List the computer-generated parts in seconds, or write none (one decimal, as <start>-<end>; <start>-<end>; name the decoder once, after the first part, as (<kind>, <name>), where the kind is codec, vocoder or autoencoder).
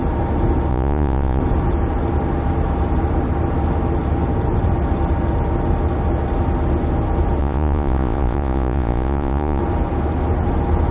0.7-1.4 (vocoder, Vocos); 7.4-9.6